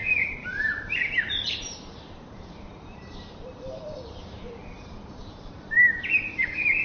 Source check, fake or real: fake